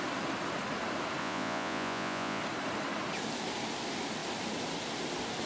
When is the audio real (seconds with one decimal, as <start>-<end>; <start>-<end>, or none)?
0.0-1.2; 2.4-5.5